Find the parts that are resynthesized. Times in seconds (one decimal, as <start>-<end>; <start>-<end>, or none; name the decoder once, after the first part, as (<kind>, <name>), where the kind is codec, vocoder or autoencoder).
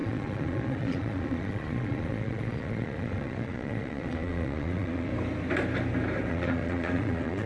0.0-5.1 (vocoder, Vocos); 6.3-7.5